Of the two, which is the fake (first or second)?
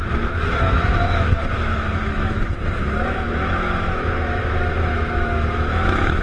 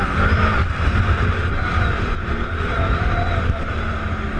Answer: first